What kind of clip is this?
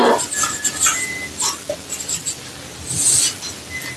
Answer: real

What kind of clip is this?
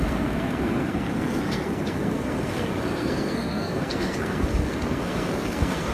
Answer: fake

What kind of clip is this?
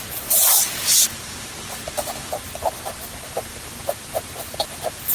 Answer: real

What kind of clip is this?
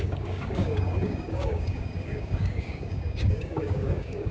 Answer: fake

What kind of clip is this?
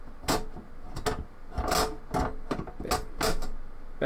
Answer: real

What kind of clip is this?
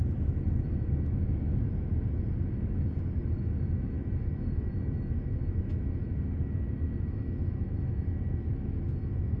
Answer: fake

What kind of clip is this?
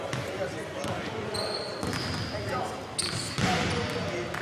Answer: real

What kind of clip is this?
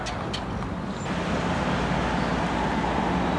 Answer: real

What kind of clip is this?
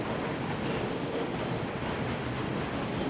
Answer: real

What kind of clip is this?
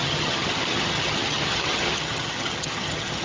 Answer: fake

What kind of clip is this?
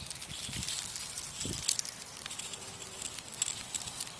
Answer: real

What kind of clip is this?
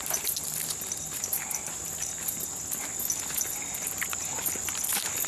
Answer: real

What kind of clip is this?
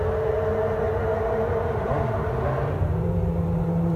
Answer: real